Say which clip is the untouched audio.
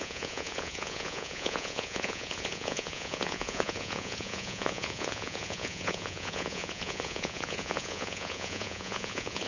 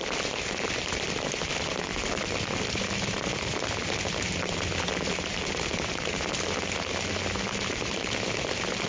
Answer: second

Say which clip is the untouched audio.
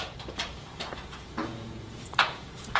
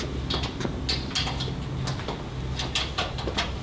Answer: second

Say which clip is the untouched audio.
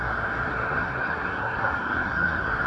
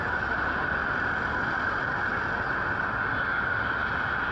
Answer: second